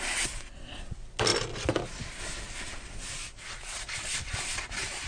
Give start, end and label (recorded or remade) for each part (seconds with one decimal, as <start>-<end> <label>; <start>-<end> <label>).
0.0-5.1 recorded